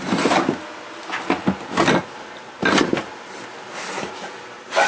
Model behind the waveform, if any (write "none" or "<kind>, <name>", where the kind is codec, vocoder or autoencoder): none